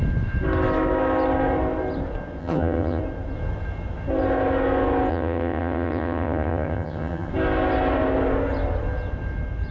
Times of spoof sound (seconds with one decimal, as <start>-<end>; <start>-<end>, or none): 2.4-3.0; 5.1-7.3